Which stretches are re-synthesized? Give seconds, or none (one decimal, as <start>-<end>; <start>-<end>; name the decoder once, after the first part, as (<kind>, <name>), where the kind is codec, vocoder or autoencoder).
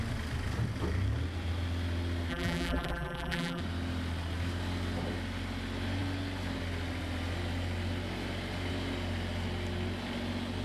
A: 2.3-3.6 (vocoder, BigVGAN v2)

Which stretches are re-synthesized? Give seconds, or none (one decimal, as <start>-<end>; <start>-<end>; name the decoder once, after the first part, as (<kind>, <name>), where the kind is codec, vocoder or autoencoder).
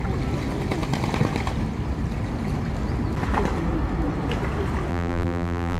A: 4.9-5.8 (vocoder, BigVGAN v2)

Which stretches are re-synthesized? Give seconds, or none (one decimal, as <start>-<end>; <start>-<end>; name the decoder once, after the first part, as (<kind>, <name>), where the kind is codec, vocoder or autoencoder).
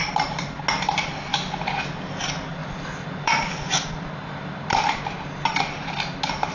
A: 2.6-5.0 (vocoder, BigVGAN v2)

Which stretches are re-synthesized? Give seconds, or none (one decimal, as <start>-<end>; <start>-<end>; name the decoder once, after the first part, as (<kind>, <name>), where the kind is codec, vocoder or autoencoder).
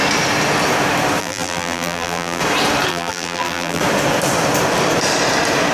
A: 1.2-2.4 (vocoder, BigVGAN v2); 2.9-3.8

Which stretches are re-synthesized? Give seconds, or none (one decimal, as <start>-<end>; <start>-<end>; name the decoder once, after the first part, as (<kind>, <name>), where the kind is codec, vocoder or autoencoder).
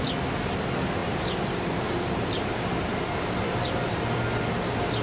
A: 1.0-4.0 (vocoder, BigVGAN v2)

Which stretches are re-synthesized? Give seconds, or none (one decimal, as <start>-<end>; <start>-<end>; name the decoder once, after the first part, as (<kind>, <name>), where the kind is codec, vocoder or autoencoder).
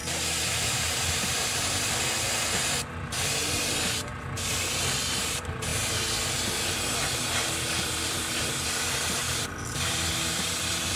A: 0.0-4.1 (vocoder, BigVGAN v2); 5.2-11.0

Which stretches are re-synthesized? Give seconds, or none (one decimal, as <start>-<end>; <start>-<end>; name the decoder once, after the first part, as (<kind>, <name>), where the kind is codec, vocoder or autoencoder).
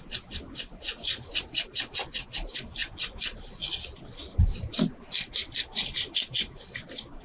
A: 2.8-4.4 (vocoder, BigVGAN v2)